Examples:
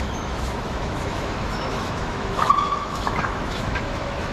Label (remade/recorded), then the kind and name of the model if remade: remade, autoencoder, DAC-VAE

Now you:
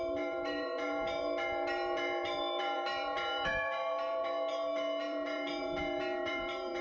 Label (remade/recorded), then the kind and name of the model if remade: remade, vocoder, BigVGAN v2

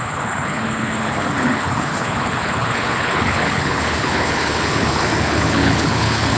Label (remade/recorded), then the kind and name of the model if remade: remade, codec, HILCodec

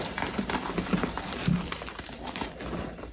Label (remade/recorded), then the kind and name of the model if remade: remade, vocoder, BigVGAN v2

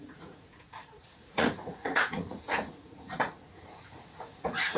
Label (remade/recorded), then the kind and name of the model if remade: remade, vocoder, Vocos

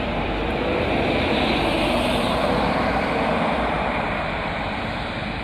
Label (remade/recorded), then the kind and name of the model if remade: remade, vocoder, BigVGAN v2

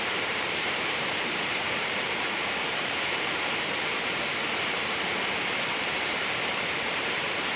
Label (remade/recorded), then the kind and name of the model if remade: remade, vocoder, BigVGAN v2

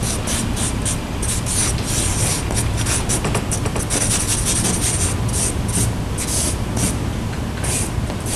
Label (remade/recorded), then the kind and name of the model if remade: recorded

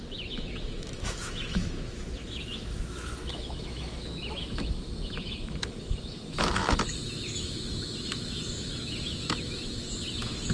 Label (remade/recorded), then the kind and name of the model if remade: remade, autoencoder, DAC-VAE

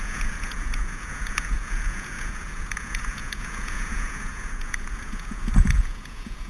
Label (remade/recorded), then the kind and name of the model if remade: remade, vocoder, Vocos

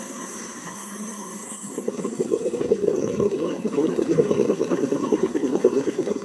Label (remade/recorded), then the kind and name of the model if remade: remade, codec, SNAC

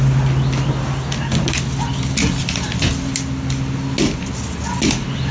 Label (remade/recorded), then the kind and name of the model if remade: recorded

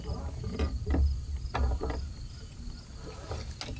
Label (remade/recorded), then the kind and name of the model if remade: recorded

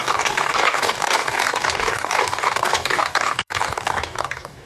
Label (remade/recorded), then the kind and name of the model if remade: remade, codec, DAC